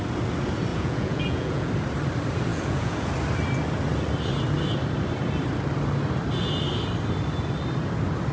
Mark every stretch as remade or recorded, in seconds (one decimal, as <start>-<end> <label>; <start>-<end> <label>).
0.0-0.7 recorded; 0.7-1.7 remade; 1.7-2.5 recorded; 2.5-3.1 remade; 3.1-8.3 recorded